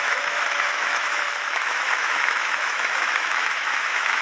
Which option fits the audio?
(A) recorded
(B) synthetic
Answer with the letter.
B